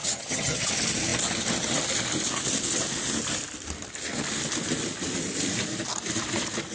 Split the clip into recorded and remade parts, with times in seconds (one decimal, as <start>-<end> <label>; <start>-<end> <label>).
0.0-0.7 remade; 0.7-6.7 recorded